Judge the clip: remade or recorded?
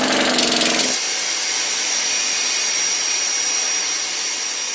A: recorded